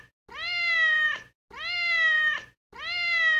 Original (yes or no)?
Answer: yes